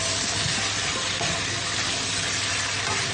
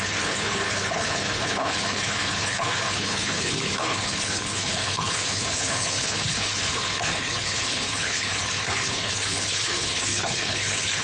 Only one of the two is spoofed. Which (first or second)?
second